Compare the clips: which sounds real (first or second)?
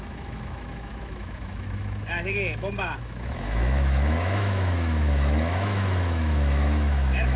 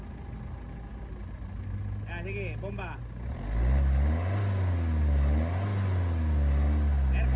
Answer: second